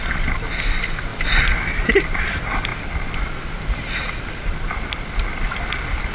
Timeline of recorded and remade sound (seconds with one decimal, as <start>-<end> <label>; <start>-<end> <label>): 0.0-6.1 recorded